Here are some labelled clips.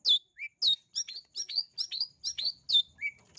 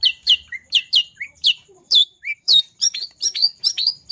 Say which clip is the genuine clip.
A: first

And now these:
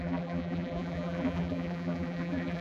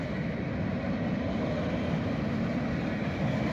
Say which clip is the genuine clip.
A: second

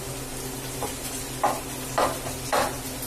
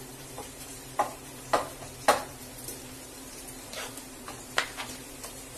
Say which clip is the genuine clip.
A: first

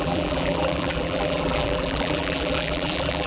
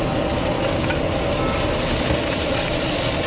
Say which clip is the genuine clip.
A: second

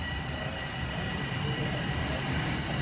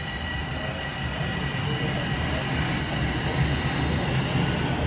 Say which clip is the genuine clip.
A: second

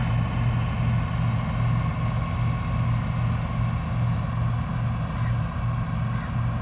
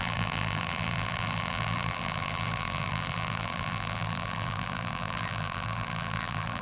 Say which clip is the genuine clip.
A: first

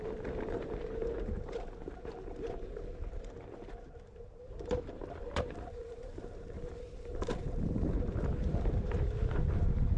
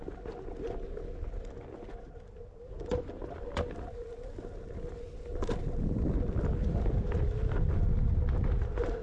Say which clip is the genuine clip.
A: second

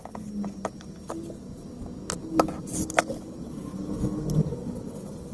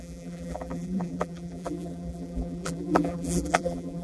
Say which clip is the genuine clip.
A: first